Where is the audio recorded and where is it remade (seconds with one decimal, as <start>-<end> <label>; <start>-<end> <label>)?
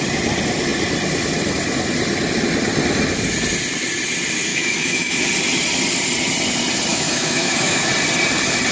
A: 0.0-4.5 recorded; 4.5-5.2 remade; 5.2-6.9 recorded; 6.9-7.9 remade; 7.9-8.7 recorded